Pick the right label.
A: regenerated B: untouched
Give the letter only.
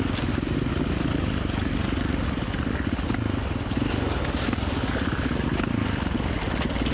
B